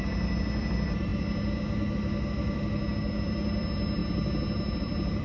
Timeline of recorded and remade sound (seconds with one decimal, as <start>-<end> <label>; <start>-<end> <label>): 0.0-1.1 remade; 1.1-3.0 recorded; 3.0-4.0 remade; 4.0-4.8 recorded; 4.8-5.2 remade